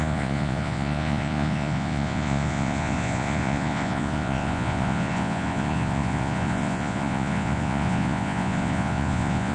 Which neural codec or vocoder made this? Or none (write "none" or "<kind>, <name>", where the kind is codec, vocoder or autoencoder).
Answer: vocoder, Vocos